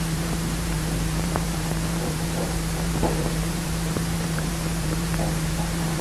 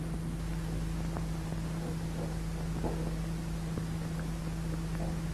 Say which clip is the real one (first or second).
second